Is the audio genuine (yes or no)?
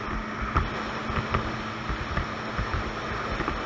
yes